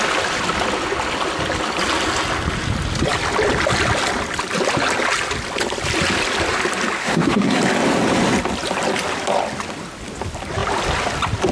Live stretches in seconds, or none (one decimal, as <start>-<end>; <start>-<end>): 0.0-7.0; 7.6-11.5

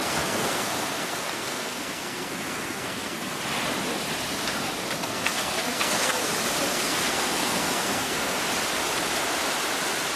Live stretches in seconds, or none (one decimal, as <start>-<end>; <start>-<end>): 3.4-5.0; 6.3-6.7; 8.4-10.2

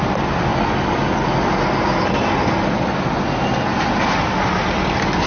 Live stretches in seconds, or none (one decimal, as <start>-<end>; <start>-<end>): 0.0-5.3

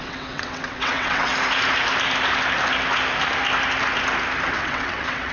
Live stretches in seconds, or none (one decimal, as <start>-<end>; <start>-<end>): 1.3-4.5

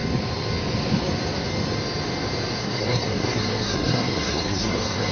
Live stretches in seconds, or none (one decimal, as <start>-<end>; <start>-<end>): 0.0-2.6

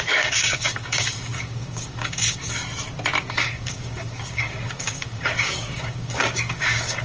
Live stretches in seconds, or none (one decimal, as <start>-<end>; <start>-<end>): 2.6-3.3